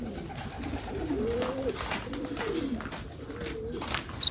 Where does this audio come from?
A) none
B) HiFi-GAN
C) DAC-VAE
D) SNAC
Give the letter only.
A